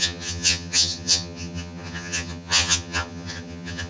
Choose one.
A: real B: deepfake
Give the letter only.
B